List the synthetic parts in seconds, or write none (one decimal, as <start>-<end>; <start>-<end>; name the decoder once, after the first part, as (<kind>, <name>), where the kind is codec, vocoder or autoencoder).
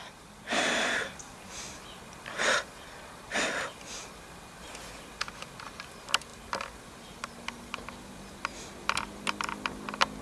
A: none